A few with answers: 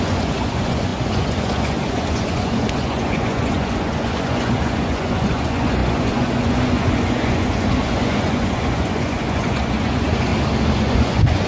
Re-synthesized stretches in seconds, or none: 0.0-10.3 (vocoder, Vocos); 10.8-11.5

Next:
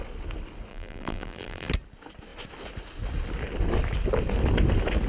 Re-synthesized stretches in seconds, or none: 0.7-1.7 (vocoder, BigVGAN v2)

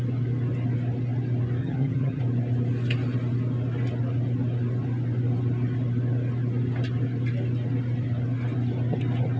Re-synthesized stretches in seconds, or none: 1.6-2.2 (vocoder, HiFi-GAN)

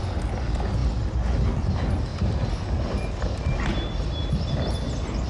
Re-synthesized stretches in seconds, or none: 2.1-4.1 (vocoder, BigVGAN v2)